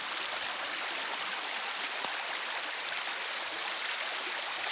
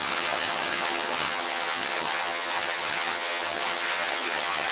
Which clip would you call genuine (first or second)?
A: first